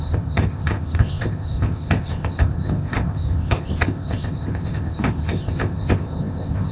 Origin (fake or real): fake